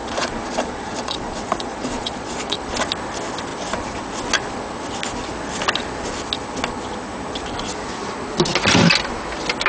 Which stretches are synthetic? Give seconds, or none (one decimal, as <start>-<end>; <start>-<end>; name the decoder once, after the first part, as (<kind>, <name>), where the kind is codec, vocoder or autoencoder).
0.0-2.6 (vocoder, Vocos)